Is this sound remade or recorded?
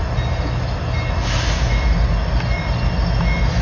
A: recorded